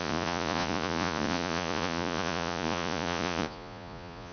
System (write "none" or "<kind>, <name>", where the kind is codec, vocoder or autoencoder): vocoder, Vocos